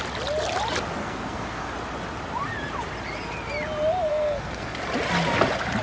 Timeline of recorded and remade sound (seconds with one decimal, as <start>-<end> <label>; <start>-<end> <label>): 0.0-1.0 recorded; 1.0-1.7 remade; 1.7-4.1 recorded; 4.1-4.8 remade; 4.8-5.8 recorded